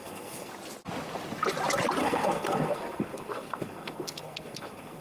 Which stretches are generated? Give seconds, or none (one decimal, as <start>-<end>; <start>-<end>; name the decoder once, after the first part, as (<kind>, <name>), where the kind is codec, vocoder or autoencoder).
0.0-0.5 (codec, SNAC); 2.0-5.0